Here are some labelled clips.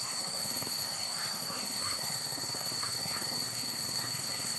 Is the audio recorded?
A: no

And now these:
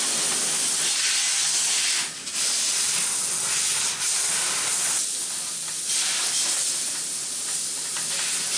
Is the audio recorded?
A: yes